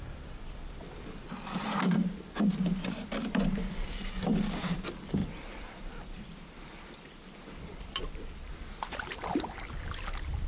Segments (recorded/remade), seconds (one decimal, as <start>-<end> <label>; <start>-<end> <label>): 0.0-10.5 remade